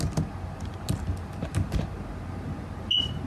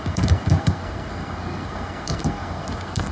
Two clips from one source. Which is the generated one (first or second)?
second